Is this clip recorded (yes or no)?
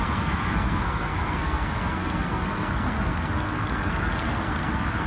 no